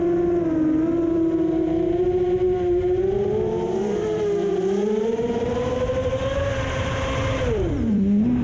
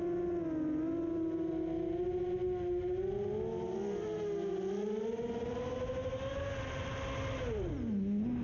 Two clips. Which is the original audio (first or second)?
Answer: second